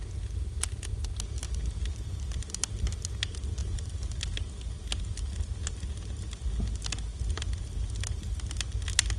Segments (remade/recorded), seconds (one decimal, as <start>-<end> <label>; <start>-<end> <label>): 0.0-3.6 recorded; 3.6-4.2 remade; 4.2-7.1 recorded; 7.1-7.9 remade; 7.9-9.2 recorded